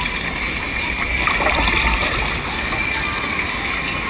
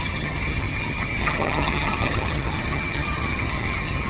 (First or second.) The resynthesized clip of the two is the second